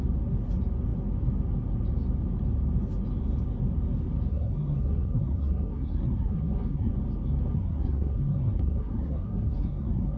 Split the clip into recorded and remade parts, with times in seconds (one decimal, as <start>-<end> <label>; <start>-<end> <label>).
0.0-4.3 recorded; 4.3-6.9 remade; 6.9-7.5 recorded; 7.5-10.2 remade